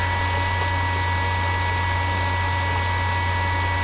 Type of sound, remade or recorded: recorded